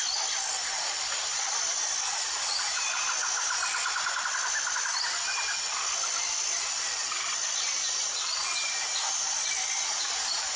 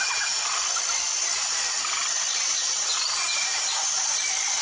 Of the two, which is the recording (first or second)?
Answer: first